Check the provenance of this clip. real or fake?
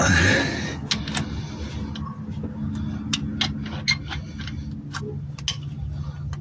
real